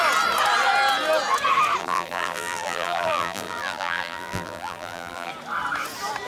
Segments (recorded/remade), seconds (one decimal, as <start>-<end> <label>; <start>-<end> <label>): 0.0-1.8 recorded; 1.8-5.3 remade; 5.3-6.3 recorded